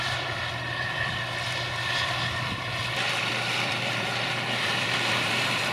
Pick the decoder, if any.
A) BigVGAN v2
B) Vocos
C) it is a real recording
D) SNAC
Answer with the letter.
A